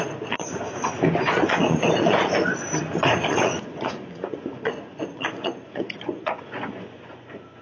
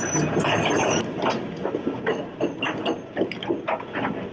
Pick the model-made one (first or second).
first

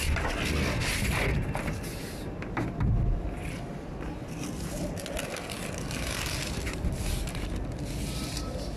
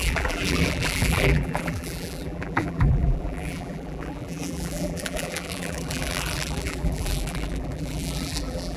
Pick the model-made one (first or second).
second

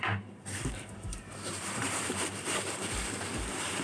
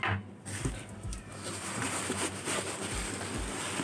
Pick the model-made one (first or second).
first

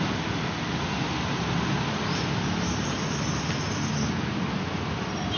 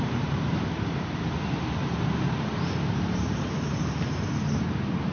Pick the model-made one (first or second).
second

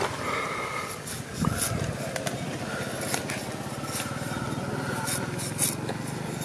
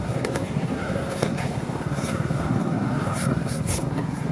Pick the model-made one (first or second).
second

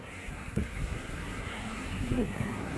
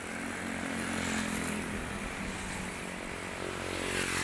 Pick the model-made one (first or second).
first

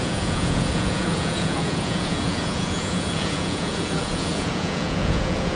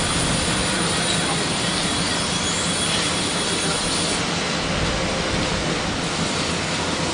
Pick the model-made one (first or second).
first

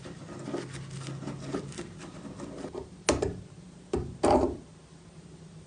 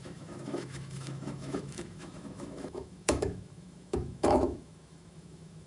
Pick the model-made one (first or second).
second